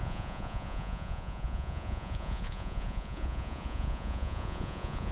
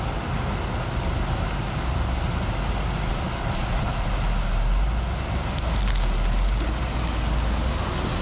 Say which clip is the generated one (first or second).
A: first